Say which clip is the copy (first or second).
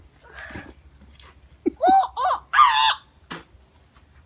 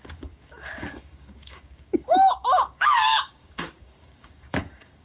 second